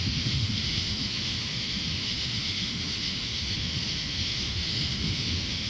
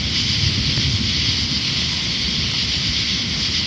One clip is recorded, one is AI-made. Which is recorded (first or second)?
second